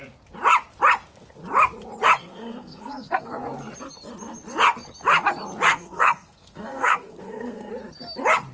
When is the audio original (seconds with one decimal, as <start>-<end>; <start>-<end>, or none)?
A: 0.0-2.2; 3.3-5.7; 7.7-8.5